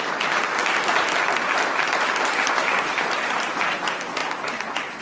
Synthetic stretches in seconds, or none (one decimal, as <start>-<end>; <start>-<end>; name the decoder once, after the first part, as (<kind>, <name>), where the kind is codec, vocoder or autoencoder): 0.6-3.6 (vocoder, BigVGAN v2); 4.2-5.0